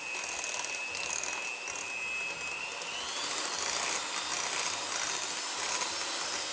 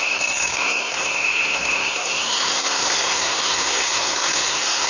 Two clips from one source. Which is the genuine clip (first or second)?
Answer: first